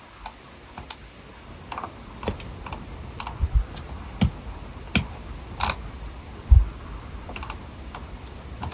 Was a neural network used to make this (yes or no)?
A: no